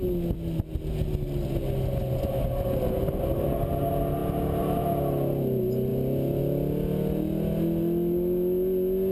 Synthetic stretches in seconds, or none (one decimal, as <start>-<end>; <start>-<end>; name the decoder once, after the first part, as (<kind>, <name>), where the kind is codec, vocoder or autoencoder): none